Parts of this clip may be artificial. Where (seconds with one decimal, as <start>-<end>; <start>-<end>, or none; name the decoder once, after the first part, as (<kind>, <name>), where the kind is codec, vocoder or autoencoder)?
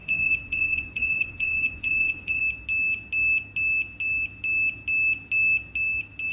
0.0-2.4 (vocoder, Vocos)